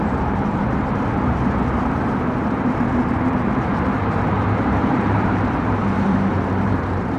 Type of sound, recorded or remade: remade